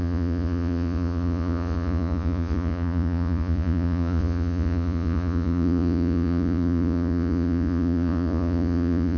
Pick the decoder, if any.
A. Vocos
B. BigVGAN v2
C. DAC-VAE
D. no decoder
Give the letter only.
A